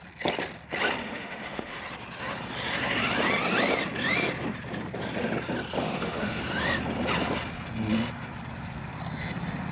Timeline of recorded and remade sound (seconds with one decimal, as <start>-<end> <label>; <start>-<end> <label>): 0.0-1.0 recorded; 1.0-1.8 remade; 1.8-5.8 recorded; 5.8-6.4 remade; 6.4-9.7 recorded